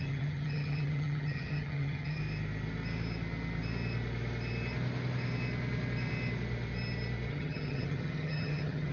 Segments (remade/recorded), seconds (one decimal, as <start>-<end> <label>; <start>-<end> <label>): 0.0-2.2 remade; 2.2-7.3 recorded; 7.3-8.9 remade